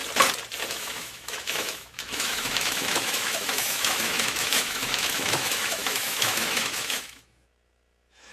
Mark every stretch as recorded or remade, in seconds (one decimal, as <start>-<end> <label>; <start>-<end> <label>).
0.0-0.7 recorded; 0.7-8.3 remade